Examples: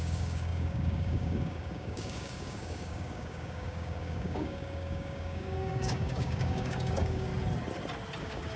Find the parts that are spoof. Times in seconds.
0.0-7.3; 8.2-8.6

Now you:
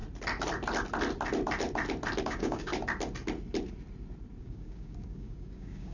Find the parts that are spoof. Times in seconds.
2.2-2.7; 4.4-5.9

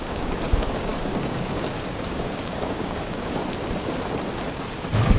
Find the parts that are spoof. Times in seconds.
0.0-3.4

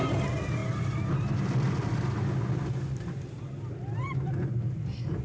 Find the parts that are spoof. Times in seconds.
none

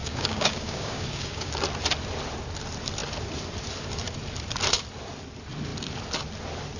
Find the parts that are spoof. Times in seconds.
0.0-1.5

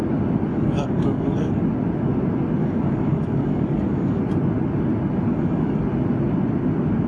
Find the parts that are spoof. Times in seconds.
0.5-1.6; 2.6-4.2; 5.3-5.8

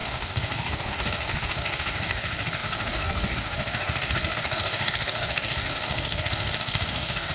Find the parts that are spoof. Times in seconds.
0.0-7.3